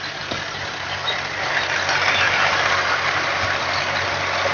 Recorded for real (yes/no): yes